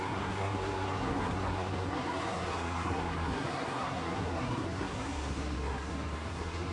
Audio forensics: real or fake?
fake